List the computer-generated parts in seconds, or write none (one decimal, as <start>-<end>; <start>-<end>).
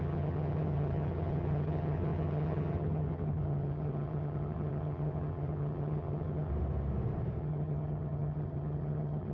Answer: 0.0-6.5; 7.4-9.3